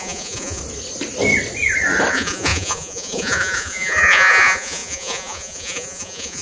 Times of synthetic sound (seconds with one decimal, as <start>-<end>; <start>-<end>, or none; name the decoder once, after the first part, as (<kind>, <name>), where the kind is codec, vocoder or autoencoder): 0.0-0.6 (vocoder, Vocos); 2.1-6.4